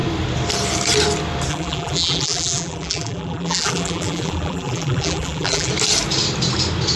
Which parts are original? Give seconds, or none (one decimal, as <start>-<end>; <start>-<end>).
0.0-1.5; 5.7-7.0